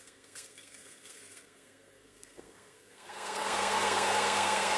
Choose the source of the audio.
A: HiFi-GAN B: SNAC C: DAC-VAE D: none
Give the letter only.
B